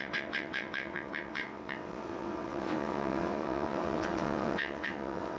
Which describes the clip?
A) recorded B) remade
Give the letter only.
B